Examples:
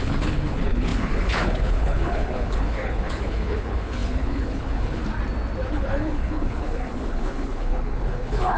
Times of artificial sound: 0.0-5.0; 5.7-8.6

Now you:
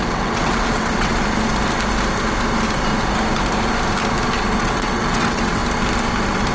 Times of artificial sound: 0.0-1.1; 4.6-5.6

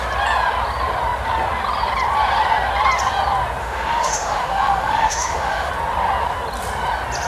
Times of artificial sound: 3.6-5.7